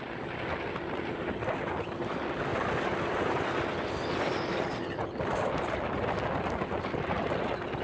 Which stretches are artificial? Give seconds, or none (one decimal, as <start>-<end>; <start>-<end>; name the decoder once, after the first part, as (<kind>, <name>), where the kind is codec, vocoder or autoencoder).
none